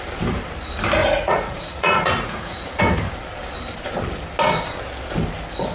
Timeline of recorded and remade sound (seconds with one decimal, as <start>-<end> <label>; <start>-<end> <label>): 0.0-1.0 recorded; 1.0-2.8 remade; 2.8-5.7 recorded